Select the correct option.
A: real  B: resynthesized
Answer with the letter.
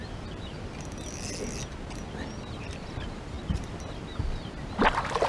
A